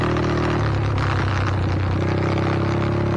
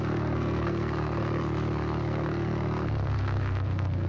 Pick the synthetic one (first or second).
second